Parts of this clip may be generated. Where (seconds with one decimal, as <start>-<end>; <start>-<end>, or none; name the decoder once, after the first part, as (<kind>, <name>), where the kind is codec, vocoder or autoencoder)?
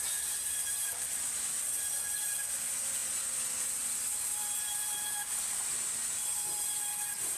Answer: none